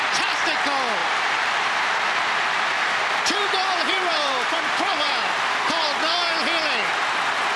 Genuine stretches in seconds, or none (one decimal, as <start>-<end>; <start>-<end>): 0.0-1.0; 5.6-7.6